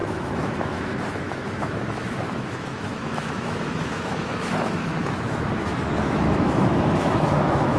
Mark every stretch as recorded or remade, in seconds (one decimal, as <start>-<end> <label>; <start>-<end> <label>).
0.0-7.8 remade